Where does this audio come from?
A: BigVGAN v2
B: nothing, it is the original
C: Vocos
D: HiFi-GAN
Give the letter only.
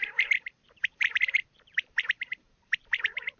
A